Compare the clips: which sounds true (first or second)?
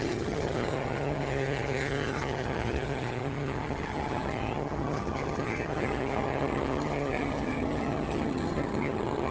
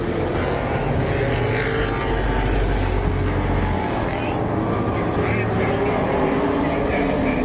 second